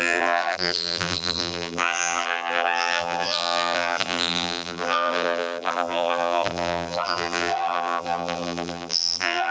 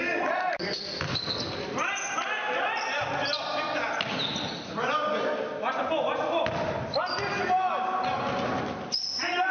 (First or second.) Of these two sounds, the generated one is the first